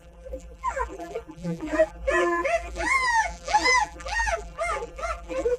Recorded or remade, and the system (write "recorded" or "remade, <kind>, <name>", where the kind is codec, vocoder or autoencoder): remade, vocoder, BigVGAN v2